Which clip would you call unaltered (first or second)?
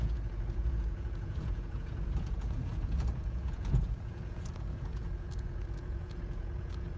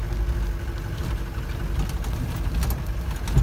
second